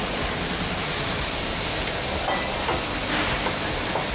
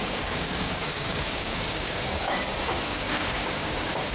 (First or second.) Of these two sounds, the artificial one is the second